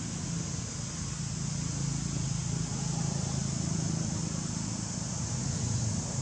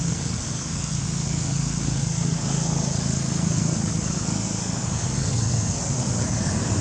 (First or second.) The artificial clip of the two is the second